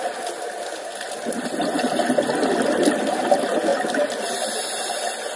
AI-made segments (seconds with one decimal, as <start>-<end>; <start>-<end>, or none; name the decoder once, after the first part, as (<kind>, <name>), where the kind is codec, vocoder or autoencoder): none